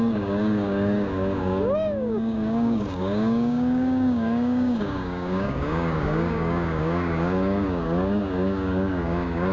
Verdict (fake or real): fake